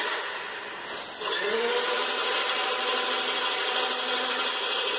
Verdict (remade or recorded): recorded